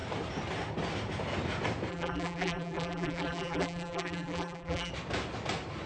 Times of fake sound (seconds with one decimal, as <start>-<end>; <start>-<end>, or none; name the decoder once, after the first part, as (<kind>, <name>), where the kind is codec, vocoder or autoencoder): 1.9-4.9 (vocoder, BigVGAN v2)